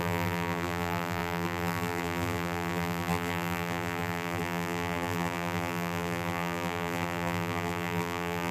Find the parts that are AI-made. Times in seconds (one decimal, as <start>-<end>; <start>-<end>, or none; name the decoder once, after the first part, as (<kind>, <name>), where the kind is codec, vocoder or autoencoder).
0.0-8.5 (vocoder, BigVGAN v2)